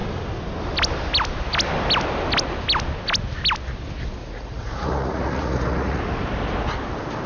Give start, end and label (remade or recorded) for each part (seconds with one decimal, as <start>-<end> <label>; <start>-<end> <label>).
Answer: 0.0-4.2 recorded; 4.2-6.0 remade; 6.0-7.3 recorded